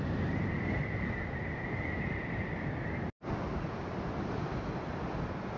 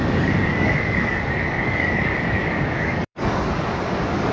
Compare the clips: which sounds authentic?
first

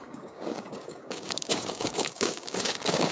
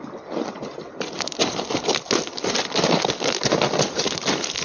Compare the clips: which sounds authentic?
second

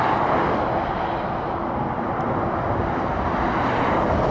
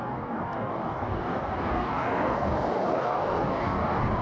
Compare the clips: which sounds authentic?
first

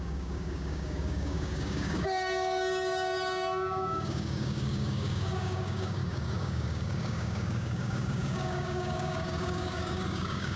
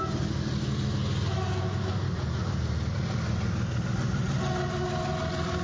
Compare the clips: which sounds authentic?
second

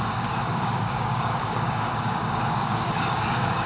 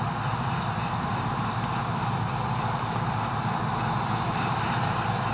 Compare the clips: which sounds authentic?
second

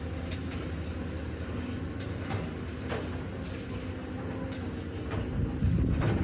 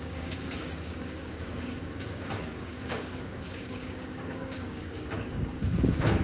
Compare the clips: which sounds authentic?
first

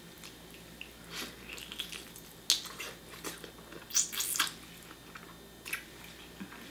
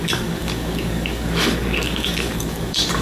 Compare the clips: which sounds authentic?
first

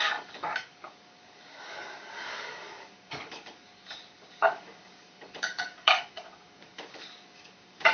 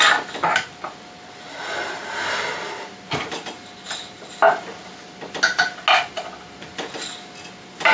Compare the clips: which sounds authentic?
second